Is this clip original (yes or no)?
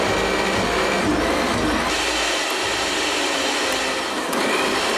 yes